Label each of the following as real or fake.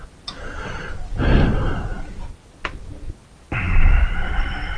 real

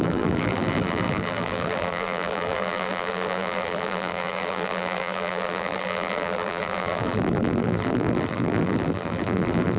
fake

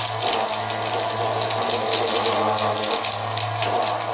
real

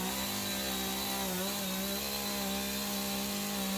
real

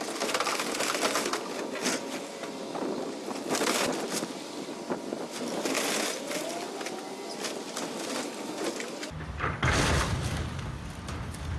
real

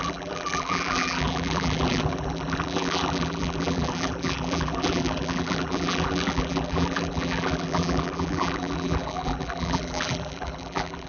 fake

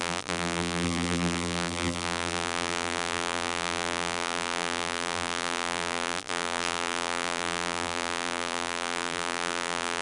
fake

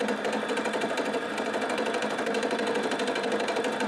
fake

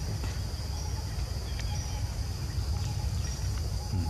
real